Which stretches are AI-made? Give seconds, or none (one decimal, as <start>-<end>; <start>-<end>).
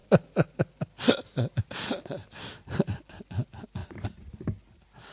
none